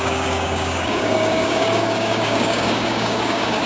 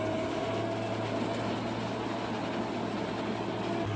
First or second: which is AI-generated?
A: first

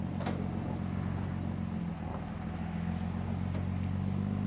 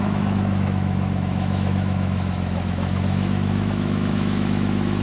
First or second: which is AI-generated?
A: second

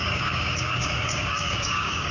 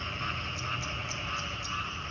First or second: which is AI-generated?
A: first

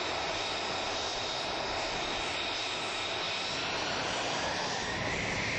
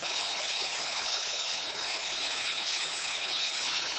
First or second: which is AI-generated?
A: second